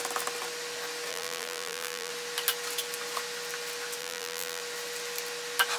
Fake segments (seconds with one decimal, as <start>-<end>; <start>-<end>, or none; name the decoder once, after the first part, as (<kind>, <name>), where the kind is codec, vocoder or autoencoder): 1.1-2.1 (vocoder, BigVGAN v2); 4.0-4.6